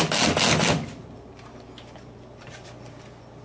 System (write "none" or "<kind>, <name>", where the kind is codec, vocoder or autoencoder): none